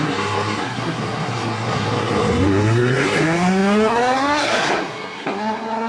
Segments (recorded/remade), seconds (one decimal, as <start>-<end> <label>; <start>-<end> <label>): 0.0-5.9 remade